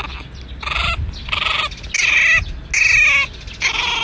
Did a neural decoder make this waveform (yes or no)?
no